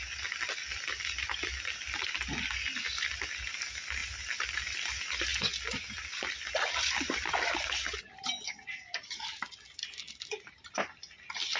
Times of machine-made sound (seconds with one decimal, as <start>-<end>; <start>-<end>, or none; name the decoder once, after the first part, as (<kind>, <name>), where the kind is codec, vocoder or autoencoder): none